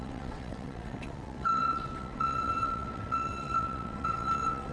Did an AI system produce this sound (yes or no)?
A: yes